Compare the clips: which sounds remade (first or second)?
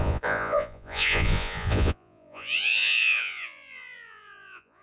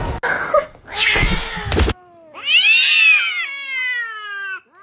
first